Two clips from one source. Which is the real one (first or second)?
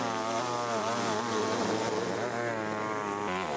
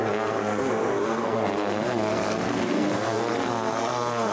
first